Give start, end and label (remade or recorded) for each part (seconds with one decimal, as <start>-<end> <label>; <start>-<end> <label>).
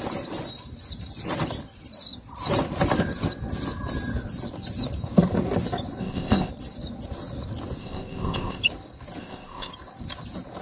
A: 0.0-6.0 recorded; 6.0-6.5 remade; 6.5-7.8 recorded; 7.8-8.6 remade; 8.6-9.2 recorded; 9.2-9.7 remade; 9.7-10.6 recorded